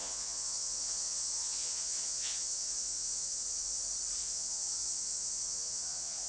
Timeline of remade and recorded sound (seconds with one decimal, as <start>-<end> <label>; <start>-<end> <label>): 0.0-3.8 remade; 3.8-4.2 recorded; 4.2-6.3 remade